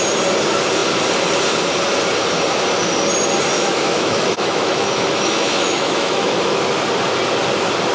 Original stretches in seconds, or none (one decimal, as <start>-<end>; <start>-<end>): 0.0-3.5; 6.6-7.9